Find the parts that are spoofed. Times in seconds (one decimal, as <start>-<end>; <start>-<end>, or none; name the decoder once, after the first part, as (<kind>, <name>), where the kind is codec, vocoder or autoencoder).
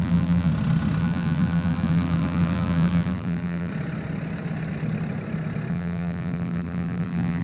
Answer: 0.0-0.5 (vocoder, BigVGAN v2); 1.0-3.7; 5.7-7.4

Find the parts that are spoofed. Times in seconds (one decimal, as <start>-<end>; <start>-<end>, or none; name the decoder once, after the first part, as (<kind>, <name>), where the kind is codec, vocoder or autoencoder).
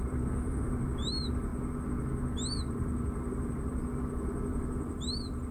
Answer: 0.0-1.5 (vocoder, BigVGAN v2); 2.7-3.8; 4.5-5.5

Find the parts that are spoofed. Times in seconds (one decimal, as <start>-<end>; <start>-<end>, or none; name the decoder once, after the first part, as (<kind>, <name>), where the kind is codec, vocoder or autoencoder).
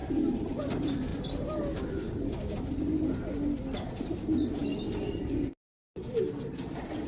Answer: 0.0-0.6 (vocoder, BigVGAN v2)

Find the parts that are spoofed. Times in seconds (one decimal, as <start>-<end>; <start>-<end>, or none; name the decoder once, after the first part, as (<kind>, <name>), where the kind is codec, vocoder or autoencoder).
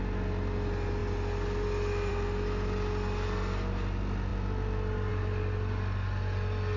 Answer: none